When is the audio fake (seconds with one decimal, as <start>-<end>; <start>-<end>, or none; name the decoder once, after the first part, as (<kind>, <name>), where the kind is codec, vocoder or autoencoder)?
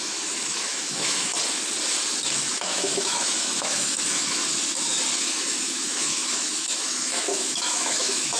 0.0-1.3 (autoencoder, DAC-VAE); 2.5-4.4; 5.2-8.4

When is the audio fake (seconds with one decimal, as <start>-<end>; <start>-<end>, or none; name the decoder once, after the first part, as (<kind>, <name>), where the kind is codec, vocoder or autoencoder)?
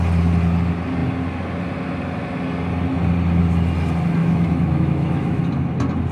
4.2-5.4 (autoencoder, DAC-VAE)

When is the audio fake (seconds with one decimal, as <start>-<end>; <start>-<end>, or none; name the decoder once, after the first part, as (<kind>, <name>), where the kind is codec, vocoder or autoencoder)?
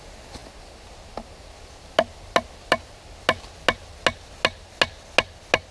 none